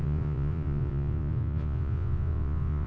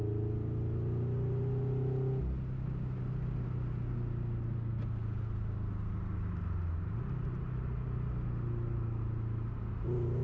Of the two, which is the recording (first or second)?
second